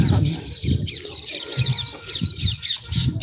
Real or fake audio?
fake